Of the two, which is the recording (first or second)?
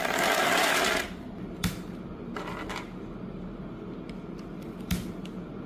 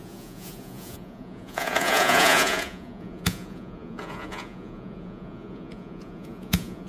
first